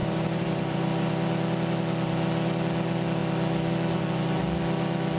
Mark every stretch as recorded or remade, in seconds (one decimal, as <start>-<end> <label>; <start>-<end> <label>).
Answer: 0.0-1.1 remade; 1.1-5.2 recorded